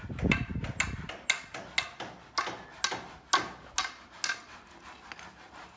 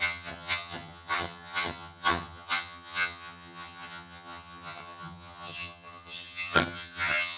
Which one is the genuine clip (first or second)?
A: first